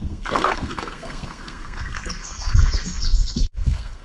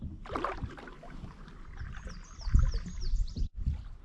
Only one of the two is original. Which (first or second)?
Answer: second